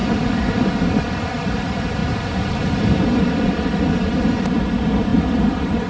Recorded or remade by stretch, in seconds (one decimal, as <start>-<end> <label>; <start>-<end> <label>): 0.0-0.9 recorded; 0.9-2.0 remade; 2.0-3.0 recorded; 3.0-5.9 remade